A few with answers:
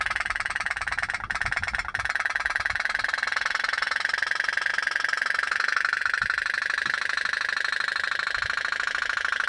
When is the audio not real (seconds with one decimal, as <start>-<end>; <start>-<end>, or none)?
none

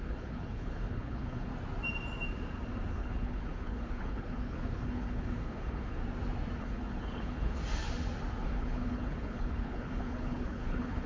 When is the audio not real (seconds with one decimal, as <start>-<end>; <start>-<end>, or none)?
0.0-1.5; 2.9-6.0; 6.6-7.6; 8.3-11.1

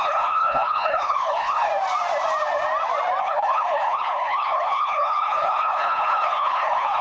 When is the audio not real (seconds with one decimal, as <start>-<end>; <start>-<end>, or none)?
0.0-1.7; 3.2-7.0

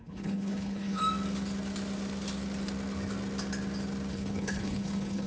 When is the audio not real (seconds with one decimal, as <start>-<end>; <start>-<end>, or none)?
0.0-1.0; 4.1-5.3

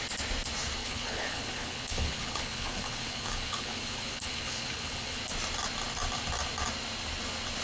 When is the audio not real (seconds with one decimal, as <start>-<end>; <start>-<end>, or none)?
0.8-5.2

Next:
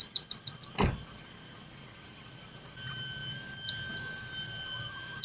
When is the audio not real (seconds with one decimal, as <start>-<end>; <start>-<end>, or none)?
none

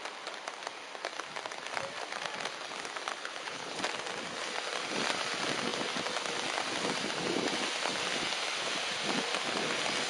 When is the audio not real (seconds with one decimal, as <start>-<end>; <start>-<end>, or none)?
3.2-3.8